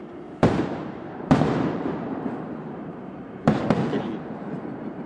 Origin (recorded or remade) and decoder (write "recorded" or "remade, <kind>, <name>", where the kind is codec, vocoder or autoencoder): remade, vocoder, BigVGAN v2